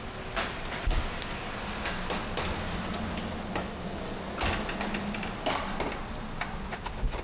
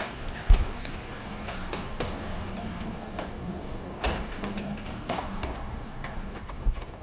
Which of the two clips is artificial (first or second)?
second